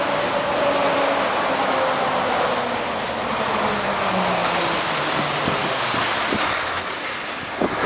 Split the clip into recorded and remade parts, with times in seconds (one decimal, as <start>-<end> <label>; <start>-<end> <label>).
0.0-7.9 recorded